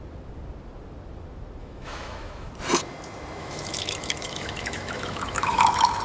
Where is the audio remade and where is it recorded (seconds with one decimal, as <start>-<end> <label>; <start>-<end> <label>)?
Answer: 0.0-1.6 recorded; 1.6-2.5 remade; 2.5-3.4 recorded; 3.4-6.0 remade